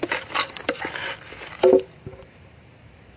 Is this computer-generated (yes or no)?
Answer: yes